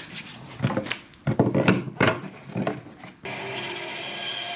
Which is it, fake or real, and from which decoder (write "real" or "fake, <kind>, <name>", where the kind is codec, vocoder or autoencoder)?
real